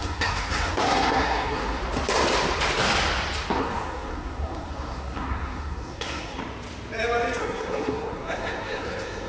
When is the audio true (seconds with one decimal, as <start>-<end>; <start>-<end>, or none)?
1.8-3.6; 6.4-7.4